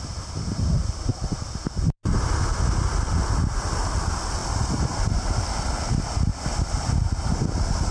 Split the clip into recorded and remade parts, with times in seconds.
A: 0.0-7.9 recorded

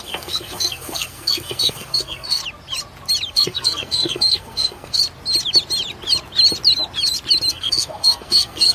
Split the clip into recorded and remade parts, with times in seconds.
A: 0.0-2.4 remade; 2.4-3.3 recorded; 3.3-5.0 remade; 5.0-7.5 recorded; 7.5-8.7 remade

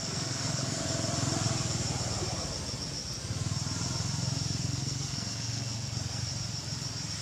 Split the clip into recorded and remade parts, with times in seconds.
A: 0.0-0.8 remade; 0.8-4.6 recorded; 4.6-6.2 remade; 6.2-7.2 recorded

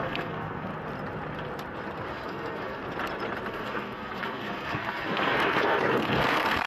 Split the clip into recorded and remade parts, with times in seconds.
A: 0.0-0.7 remade; 0.7-2.1 recorded; 2.1-2.8 remade; 2.8-3.5 recorded; 3.5-6.7 remade

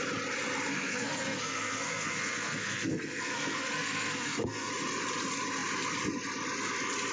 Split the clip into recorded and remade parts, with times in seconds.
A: 0.0-0.7 recorded; 0.7-4.7 remade; 4.7-7.1 recorded

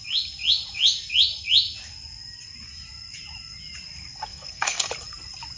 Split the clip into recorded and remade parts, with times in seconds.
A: 0.0-4.3 recorded; 4.3-4.9 remade; 4.9-5.6 recorded